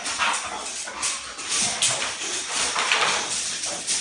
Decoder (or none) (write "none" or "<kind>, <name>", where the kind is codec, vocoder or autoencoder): none